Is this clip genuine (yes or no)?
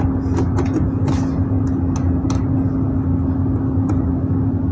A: yes